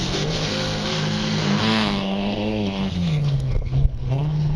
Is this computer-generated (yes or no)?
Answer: yes